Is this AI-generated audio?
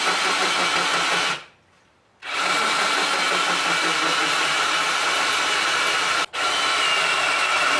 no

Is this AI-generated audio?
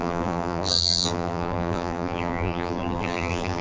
yes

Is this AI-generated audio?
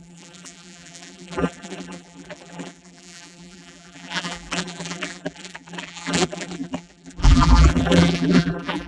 yes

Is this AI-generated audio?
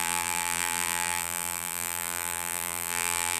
yes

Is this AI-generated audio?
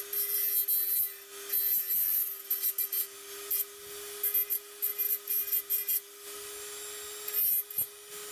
no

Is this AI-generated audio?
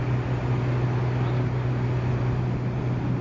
no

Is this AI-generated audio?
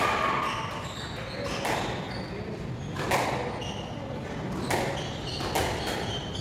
no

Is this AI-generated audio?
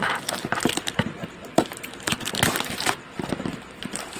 yes